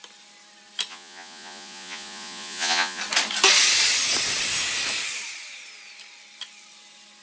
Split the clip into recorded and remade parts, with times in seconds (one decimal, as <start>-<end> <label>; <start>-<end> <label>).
0.0-0.9 recorded; 0.9-3.0 remade; 3.0-7.2 recorded